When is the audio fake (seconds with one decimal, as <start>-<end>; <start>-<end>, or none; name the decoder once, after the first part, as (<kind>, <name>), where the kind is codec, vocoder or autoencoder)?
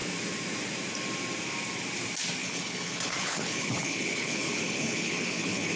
2.4-5.8 (codec, HILCodec)